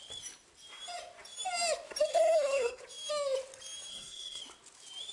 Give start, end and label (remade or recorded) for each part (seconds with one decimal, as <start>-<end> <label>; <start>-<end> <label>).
0.0-2.1 recorded; 2.1-2.8 remade; 2.8-3.9 recorded; 3.9-4.4 remade; 4.4-5.1 recorded